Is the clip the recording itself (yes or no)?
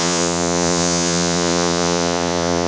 no